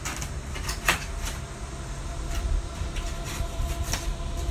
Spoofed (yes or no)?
yes